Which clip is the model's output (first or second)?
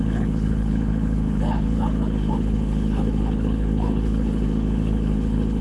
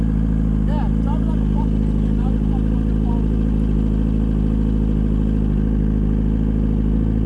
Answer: first